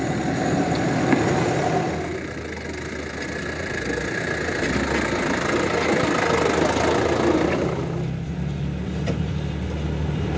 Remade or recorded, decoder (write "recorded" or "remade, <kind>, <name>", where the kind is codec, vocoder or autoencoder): recorded